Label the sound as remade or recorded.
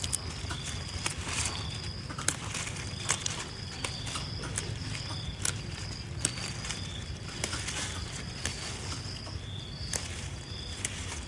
recorded